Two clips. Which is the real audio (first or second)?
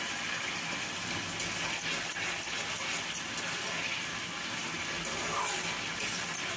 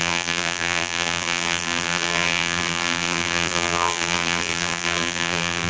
first